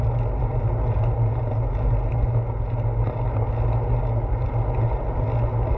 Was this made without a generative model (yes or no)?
yes